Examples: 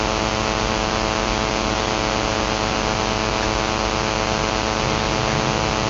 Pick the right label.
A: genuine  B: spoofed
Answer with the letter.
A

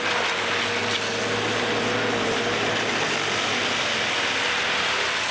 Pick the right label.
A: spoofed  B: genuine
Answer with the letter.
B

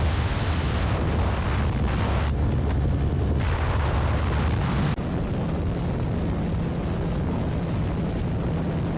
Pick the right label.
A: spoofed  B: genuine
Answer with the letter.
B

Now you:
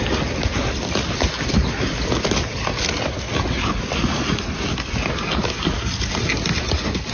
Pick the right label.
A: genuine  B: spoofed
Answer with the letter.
A